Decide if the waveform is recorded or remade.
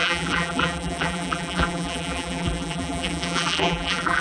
remade